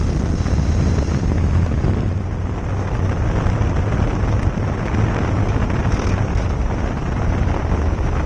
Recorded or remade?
recorded